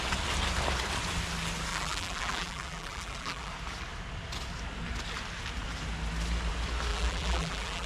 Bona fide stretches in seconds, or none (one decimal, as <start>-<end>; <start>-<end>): 0.0-1.7; 3.5-6.9